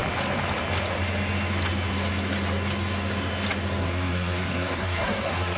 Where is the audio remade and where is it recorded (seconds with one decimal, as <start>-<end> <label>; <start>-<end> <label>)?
0.0-3.8 recorded; 3.8-5.6 remade